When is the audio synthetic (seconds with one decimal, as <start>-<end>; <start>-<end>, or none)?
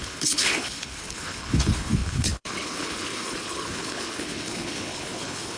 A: 0.0-5.6